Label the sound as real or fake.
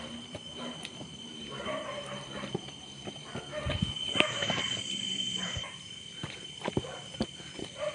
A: fake